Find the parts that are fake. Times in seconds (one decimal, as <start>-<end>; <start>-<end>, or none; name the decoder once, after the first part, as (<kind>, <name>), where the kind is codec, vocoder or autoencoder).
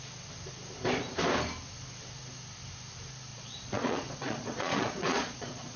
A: 3.3-5.8 (vocoder, Vocos)